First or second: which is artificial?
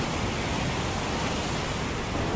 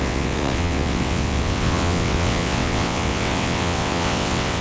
second